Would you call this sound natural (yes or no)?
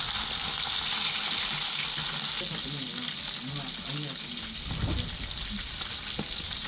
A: yes